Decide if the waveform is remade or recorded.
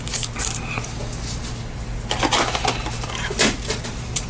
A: remade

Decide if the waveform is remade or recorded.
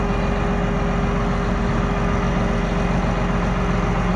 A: recorded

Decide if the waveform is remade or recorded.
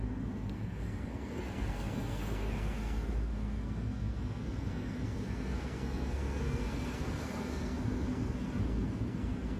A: remade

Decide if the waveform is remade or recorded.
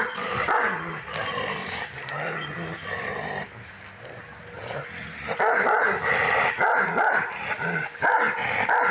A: recorded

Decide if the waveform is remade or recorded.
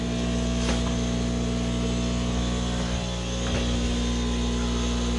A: recorded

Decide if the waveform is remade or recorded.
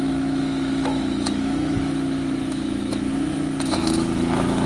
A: remade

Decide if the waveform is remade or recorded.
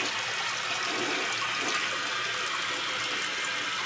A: recorded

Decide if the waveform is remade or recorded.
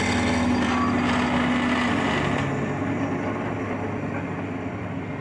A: recorded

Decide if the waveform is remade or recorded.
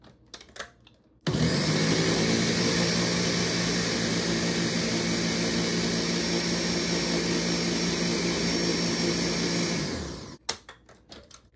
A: recorded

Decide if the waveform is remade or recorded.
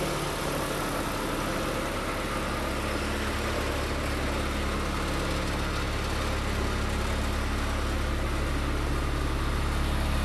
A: recorded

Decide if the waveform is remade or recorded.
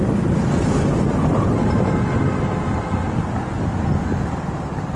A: recorded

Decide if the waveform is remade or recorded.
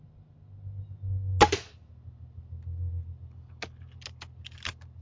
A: recorded